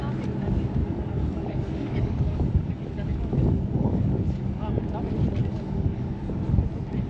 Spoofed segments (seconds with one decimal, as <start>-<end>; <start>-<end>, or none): 0.8-4.7; 5.4-6.4